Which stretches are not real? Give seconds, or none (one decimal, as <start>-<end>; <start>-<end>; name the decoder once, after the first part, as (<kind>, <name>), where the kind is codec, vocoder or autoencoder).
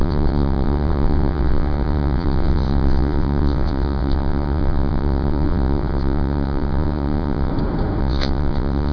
0.0-7.5 (vocoder, WaveNeXt); 8.0-8.9